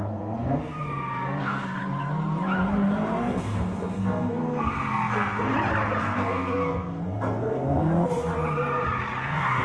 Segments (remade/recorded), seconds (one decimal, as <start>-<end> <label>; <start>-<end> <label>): 0.0-1.8 remade; 1.8-3.2 recorded; 3.2-5.5 remade; 5.5-6.0 recorded; 6.0-7.9 remade; 7.9-9.2 recorded; 9.2-9.6 remade

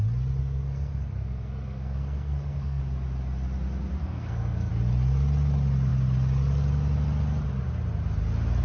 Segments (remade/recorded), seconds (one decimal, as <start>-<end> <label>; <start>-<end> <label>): 0.0-0.4 recorded; 0.4-2.8 remade; 2.8-4.0 recorded; 4.0-4.7 remade; 4.7-8.6 recorded